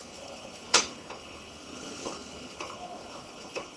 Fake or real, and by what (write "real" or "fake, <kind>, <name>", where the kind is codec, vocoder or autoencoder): fake, codec, HILCodec